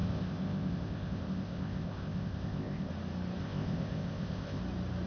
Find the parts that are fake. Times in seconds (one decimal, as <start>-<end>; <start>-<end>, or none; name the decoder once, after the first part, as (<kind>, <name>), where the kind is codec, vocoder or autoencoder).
0.0-2.9 (codec, ZipCodec); 3.4-4.6